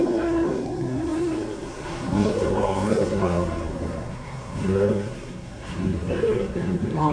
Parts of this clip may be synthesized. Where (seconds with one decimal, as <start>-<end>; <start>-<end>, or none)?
0.0-7.1

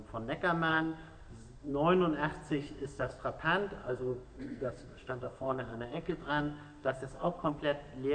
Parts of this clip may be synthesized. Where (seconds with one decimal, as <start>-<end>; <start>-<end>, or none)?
0.7-1.7; 2.5-3.1; 3.8-7.6

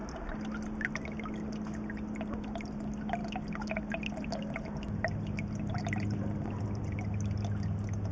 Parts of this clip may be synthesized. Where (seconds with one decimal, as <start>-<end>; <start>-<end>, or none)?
none

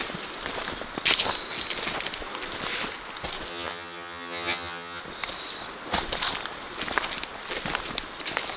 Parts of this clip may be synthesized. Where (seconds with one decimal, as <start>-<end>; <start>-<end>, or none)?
3.5-5.0